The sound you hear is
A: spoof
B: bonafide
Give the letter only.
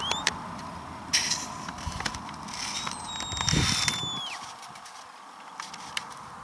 B